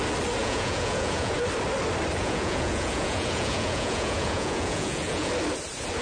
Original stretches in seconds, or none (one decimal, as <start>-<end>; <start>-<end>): 0.0-0.4; 1.4-2.2; 5.3-6.0